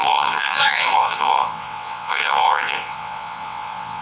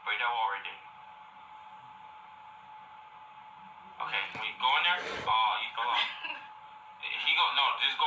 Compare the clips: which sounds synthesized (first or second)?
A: first